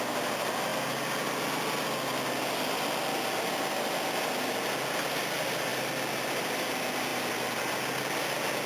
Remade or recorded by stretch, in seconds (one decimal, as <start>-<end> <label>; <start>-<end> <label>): 0.0-8.7 recorded